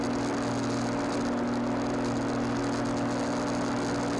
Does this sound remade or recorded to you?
recorded